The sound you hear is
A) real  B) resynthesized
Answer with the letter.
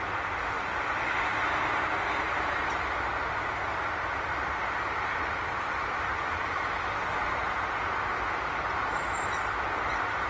A